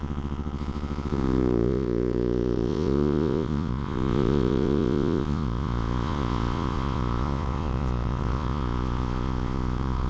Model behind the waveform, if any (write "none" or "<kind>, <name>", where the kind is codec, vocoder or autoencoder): vocoder, Vocos